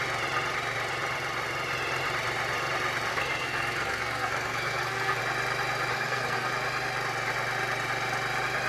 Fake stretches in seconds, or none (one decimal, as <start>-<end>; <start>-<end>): 3.1-5.2; 5.9-6.5